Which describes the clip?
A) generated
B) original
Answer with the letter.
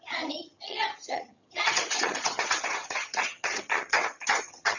A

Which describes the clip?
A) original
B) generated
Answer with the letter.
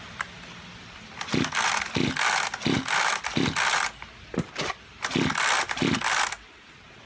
A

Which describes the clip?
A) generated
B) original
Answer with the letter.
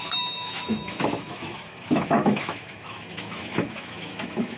A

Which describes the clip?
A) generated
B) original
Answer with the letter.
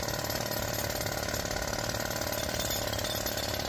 B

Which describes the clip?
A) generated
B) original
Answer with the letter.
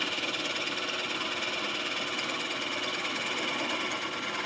B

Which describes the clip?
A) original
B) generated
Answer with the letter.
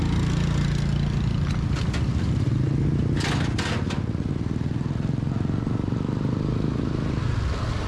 A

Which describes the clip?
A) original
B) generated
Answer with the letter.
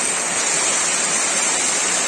A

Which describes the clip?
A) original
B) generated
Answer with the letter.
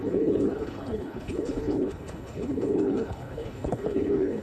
B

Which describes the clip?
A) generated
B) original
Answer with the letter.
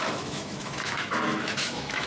A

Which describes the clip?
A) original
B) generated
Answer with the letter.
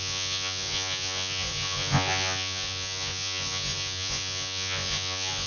B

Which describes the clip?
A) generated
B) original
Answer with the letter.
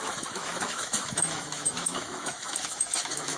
A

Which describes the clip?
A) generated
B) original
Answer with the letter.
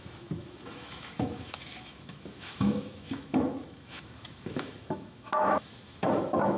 A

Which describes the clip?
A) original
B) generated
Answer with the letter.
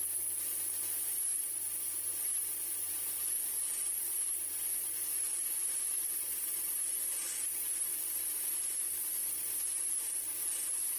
A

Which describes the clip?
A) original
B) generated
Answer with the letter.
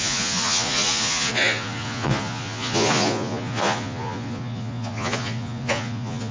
B